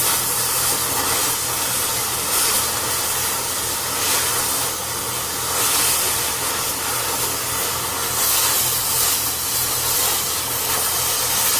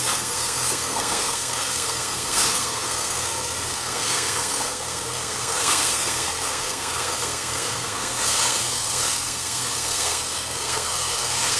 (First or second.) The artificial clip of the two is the second